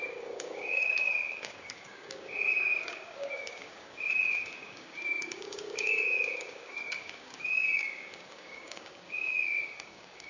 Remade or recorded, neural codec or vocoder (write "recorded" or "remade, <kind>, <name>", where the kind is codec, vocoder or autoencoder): remade, codec, DAC